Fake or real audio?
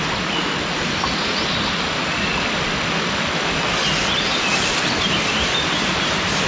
real